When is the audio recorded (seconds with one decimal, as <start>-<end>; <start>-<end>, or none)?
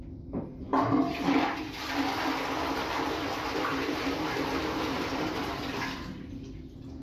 0.0-0.7; 1.6-3.7; 5.7-7.0